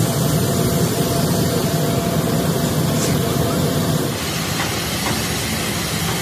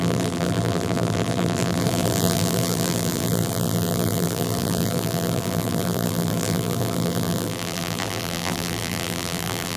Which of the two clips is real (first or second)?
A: first